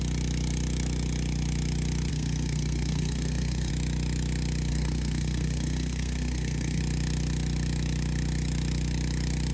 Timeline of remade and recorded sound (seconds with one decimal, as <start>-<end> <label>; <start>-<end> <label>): 0.0-2.1 recorded; 2.1-3.7 remade; 3.7-4.7 recorded; 4.7-6.8 remade; 6.8-9.5 recorded